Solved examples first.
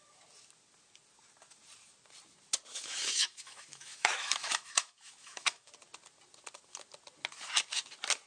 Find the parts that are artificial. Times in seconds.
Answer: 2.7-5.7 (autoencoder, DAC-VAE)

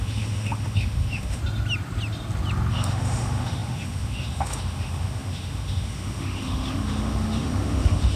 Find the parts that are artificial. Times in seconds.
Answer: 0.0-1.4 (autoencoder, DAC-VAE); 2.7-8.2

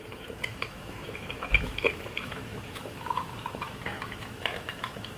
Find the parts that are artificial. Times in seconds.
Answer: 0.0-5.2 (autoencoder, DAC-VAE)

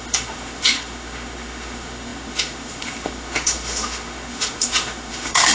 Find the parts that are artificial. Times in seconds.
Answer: 0.0-5.5 (autoencoder, DAC-VAE)

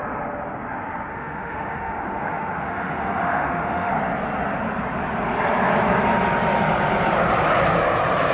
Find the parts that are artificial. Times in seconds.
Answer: 1.1-3.9 (autoencoder, DAC-VAE)